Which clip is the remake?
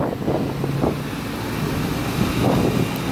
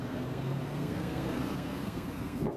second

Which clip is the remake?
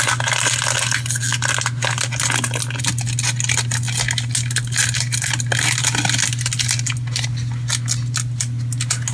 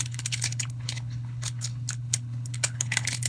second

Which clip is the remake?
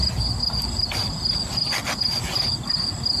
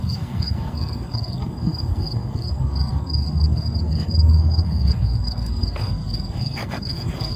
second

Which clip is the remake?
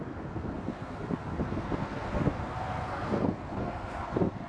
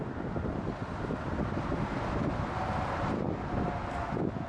first